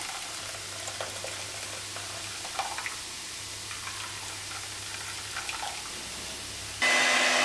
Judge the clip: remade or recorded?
recorded